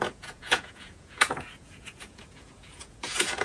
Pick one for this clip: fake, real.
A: fake